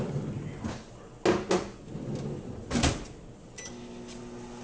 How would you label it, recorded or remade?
recorded